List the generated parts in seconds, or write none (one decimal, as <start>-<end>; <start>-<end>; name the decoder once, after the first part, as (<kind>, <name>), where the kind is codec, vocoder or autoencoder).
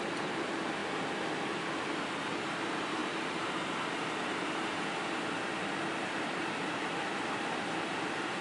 0.0-0.8 (vocoder, BigVGAN v2); 2.4-3.0; 3.9-4.4; 6.3-8.4